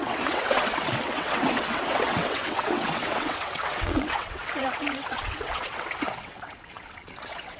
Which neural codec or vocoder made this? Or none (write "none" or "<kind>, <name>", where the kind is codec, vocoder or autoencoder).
vocoder, WaveNeXt